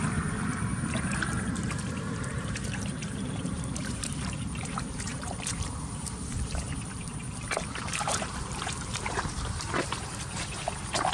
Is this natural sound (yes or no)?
no